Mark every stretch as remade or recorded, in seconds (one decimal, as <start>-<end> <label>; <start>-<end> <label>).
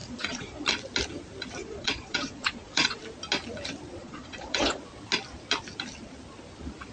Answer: 0.0-0.7 remade; 0.7-1.6 recorded; 1.6-3.0 remade; 3.0-4.0 recorded; 4.0-4.8 remade; 4.8-6.9 recorded